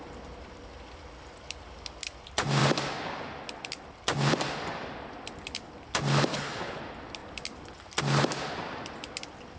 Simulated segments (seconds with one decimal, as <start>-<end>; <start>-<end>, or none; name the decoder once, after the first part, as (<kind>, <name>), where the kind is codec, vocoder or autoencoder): 6.3-6.8 (codec, HILCodec)